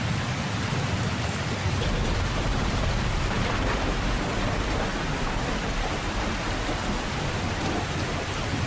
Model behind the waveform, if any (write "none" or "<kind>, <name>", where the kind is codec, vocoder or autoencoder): none